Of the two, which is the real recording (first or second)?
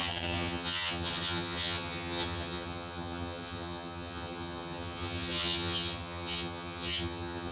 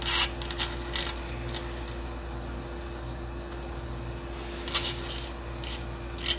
second